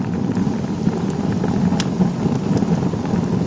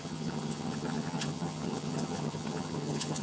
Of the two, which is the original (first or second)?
first